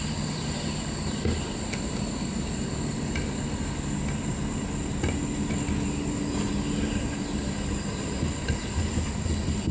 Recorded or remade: recorded